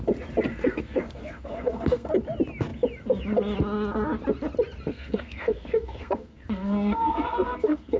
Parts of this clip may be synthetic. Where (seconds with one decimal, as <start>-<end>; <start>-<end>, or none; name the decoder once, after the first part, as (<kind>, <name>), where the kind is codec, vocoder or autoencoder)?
0.5-2.1 (codec, SNAC); 4.9-8.0